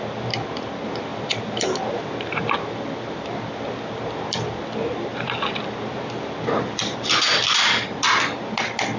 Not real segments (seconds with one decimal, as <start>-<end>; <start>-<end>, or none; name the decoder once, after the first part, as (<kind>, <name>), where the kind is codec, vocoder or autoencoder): 1.1-2.4 (vocoder, BigVGAN v2); 5.1-7.6